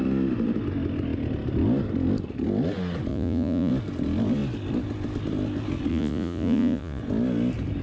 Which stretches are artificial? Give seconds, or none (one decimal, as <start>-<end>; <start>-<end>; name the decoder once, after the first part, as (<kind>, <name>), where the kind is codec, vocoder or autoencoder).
3.1-3.7 (vocoder, Vocos); 5.9-7.0